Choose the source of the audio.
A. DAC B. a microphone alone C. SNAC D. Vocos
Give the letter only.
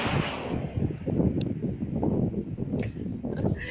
B